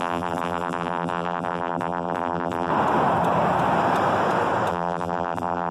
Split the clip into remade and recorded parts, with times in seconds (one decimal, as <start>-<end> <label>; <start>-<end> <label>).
0.0-2.7 remade; 2.7-4.7 recorded; 4.7-5.7 remade